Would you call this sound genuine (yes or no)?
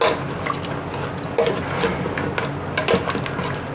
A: yes